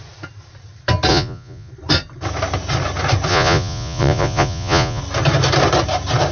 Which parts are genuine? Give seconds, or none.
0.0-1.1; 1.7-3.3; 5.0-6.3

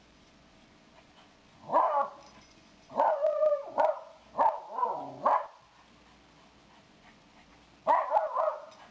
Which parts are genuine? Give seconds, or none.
1.7-2.4; 4.2-6.8; 7.5-8.5

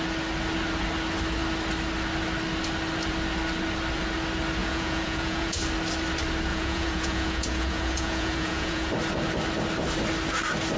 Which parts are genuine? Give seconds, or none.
0.0-4.6; 5.6-6.5; 8.9-10.8